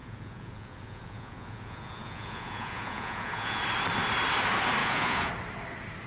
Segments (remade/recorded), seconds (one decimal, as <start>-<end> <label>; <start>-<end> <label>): 0.0-3.6 remade; 3.6-4.8 recorded; 4.8-5.3 remade; 5.3-6.1 recorded